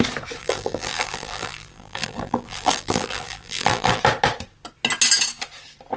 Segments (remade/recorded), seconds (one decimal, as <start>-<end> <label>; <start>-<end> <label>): 0.0-0.4 recorded; 0.4-4.0 remade; 4.0-6.0 recorded